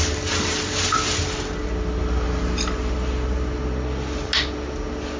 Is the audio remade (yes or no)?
no